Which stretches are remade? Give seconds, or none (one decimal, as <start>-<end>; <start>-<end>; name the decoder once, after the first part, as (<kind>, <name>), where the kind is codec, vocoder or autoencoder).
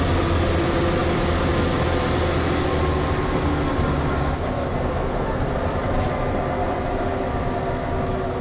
4.9-5.4 (codec, SNAC)